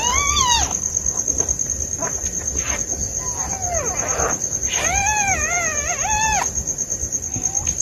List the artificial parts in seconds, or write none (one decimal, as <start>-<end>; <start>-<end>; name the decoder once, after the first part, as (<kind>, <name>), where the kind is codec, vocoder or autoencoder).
none

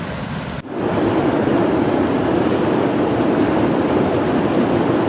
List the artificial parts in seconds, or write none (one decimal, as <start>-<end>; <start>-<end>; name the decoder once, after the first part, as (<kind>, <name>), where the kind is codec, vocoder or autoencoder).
none

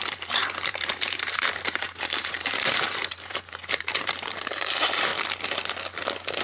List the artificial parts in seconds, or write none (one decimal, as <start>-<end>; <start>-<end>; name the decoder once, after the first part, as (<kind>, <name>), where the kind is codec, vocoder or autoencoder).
0.0-5.1 (vocoder, BigVGAN v2)

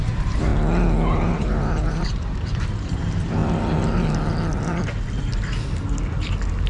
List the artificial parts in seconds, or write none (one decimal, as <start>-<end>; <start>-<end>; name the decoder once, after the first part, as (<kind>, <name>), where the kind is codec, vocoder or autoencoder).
0.0-0.5 (vocoder, BigVGAN v2); 1.1-3.4

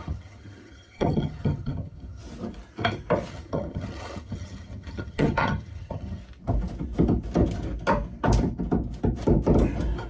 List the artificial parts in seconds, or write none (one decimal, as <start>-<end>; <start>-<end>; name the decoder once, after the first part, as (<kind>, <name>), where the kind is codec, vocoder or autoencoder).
0.0-2.2 (vocoder, HiFi-GAN); 3.3-6.2

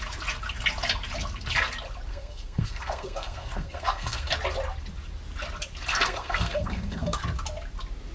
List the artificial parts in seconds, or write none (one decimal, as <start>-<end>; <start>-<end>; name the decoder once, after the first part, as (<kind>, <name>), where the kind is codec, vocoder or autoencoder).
2.1-4.3 (codec, SNAC); 5.9-7.2

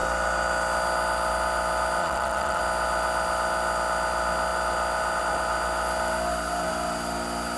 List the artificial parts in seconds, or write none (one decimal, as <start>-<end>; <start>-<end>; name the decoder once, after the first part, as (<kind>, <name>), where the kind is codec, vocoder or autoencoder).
2.0-2.6 (vocoder, Vocos)